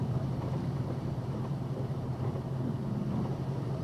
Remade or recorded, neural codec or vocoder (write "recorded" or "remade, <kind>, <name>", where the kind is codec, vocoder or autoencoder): remade, vocoder, BigVGAN v2